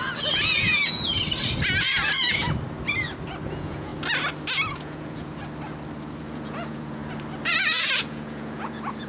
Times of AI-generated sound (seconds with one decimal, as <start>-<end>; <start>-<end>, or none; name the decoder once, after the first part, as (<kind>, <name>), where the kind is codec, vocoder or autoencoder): 0.0-1.1 (vocoder, Vocos); 3.5-3.9; 4.7-5.4; 6.2-7.0; 7.5-9.1